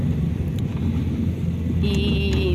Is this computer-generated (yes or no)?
no